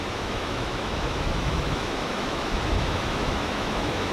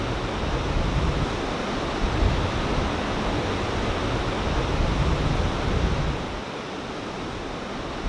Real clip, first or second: second